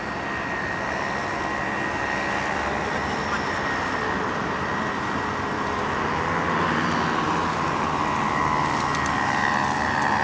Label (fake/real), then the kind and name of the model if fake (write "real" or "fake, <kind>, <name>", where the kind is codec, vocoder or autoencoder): real